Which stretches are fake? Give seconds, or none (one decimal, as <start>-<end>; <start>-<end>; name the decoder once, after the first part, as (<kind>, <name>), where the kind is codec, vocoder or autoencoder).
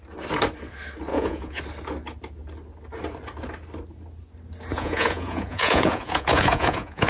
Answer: 1.1-1.6 (vocoder, Vocos); 4.7-7.1